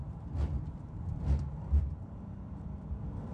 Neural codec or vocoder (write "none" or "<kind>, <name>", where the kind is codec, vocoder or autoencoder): vocoder, BigVGAN v2